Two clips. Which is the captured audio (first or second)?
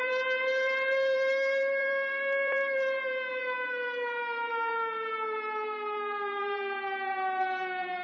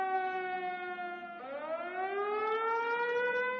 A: second